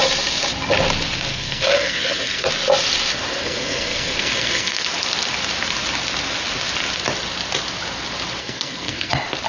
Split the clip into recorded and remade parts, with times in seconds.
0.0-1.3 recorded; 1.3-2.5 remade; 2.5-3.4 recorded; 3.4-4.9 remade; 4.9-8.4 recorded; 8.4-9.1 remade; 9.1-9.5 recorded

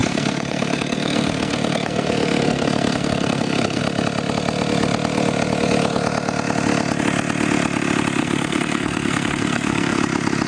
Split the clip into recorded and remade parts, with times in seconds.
0.0-3.8 remade; 3.8-8.2 recorded; 8.2-10.0 remade; 10.0-10.5 recorded

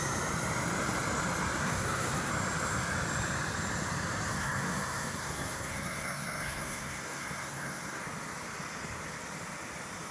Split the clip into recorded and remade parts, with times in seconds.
0.0-1.6 recorded; 1.6-2.3 remade; 2.3-4.3 recorded; 4.3-8.0 remade; 8.0-10.1 recorded